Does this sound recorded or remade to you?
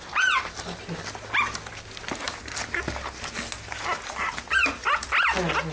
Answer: recorded